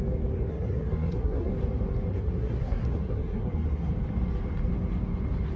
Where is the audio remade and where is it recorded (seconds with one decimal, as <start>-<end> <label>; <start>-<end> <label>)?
0.0-0.5 recorded; 0.5-1.5 remade; 1.5-2.1 recorded; 2.1-3.9 remade; 3.9-5.6 recorded